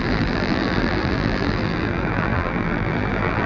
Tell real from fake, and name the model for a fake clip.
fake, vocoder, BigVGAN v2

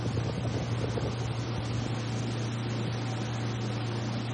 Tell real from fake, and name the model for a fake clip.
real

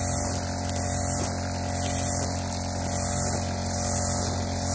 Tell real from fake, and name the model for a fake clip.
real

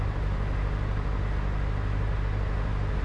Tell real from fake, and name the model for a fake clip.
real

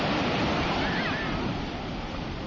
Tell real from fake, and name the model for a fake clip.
fake, vocoder, BigVGAN v2